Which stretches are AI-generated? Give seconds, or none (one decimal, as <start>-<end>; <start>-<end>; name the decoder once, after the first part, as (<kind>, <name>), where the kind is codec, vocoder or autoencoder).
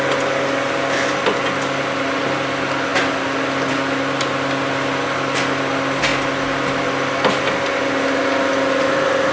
none